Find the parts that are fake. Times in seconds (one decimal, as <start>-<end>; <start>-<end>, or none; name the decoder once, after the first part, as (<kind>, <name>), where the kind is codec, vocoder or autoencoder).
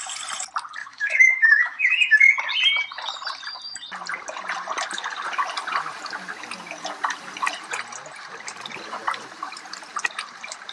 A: 0.8-2.3 (autoencoder, DAC-VAE)